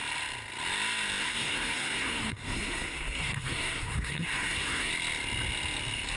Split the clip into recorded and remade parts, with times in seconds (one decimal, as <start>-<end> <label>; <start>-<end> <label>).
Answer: 0.0-1.2 recorded; 1.2-4.9 remade; 4.9-6.2 recorded